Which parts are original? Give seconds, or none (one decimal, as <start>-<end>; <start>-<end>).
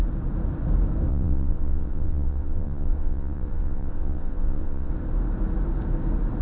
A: 0.0-1.1; 4.9-6.4